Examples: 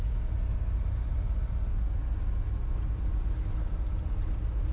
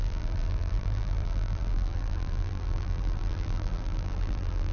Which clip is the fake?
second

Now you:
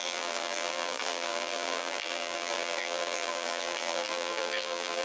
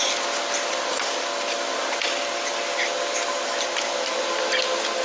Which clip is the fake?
first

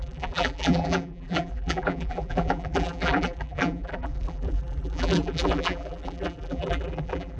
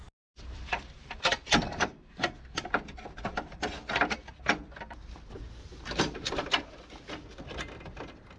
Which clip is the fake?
first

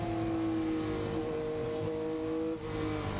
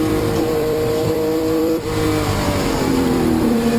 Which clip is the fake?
second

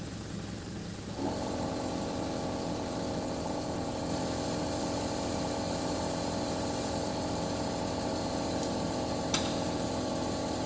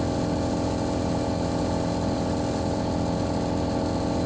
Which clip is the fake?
first